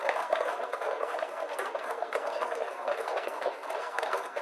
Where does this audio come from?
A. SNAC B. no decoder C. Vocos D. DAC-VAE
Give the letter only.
A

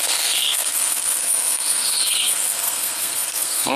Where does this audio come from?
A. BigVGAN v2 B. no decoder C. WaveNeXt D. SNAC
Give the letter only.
D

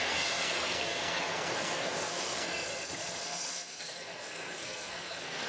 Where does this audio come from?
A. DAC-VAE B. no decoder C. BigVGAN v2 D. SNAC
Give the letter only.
D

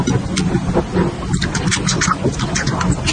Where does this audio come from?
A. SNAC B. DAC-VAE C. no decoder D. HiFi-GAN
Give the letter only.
C